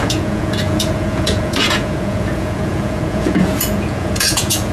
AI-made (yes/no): yes